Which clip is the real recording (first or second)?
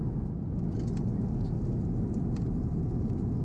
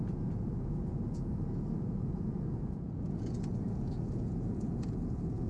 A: first